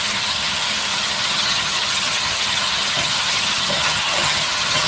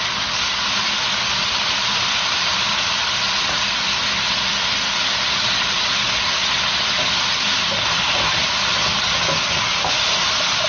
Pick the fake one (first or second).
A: first